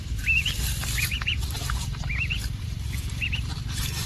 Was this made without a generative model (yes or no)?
no